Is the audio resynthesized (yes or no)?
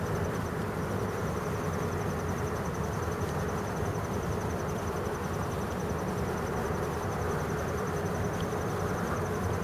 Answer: no